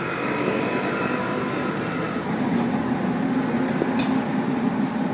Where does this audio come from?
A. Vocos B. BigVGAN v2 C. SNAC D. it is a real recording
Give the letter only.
D